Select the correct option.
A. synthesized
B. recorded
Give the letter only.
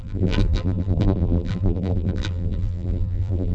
A